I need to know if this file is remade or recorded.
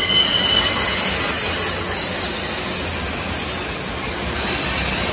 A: recorded